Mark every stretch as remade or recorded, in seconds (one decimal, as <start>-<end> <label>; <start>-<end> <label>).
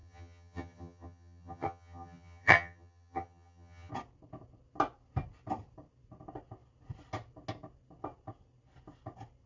0.0-3.9 remade; 3.9-9.5 recorded